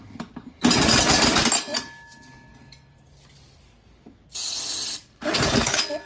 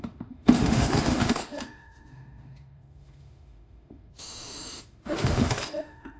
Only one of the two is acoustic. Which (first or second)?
first